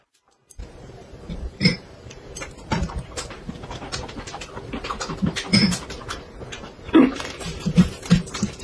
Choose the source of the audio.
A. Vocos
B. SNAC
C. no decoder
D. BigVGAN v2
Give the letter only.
D